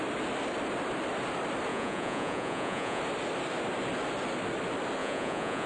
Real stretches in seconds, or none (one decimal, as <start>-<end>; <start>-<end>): 0.0-1.7; 3.0-5.0